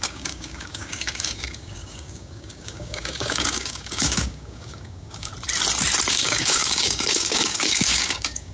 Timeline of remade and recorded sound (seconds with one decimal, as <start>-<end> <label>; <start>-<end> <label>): 0.0-5.3 remade; 5.3-6.1 recorded; 6.1-8.5 remade